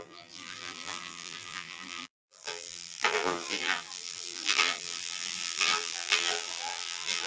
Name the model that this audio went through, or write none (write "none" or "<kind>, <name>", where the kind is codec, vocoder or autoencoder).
vocoder, BigVGAN v2